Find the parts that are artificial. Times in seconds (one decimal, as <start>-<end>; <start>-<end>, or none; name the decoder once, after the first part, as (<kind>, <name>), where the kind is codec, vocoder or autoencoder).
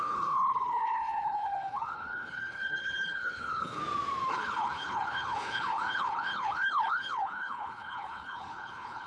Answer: 0.0-3.8 (codec, HILCodec); 4.3-9.1